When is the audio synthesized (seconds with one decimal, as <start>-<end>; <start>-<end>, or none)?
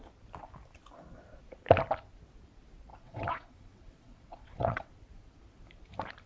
2.9-4.9